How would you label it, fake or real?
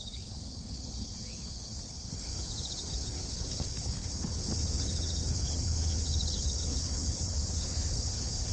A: fake